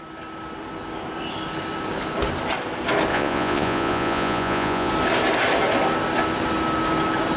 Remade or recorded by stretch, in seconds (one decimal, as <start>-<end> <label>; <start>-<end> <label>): 0.0-3.1 recorded; 3.1-4.9 remade; 4.9-7.4 recorded